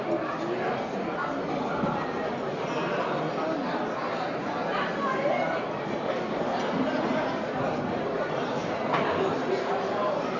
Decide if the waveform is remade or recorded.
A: recorded